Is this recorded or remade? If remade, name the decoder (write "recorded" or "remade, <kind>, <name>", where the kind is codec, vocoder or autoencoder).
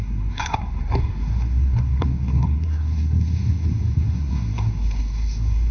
remade, codec, SNAC